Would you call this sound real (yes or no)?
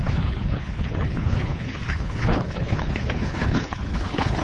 no